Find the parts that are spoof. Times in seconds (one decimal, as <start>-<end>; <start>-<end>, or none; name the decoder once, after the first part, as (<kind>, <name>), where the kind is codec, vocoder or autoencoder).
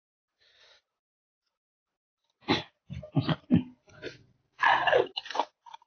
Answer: none